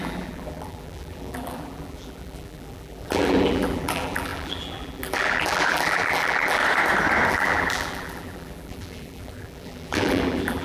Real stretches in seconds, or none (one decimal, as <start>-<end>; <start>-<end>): 6.6-7.3